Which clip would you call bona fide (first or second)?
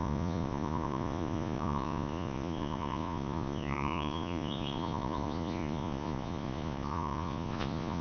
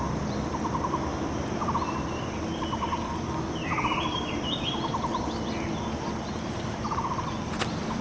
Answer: second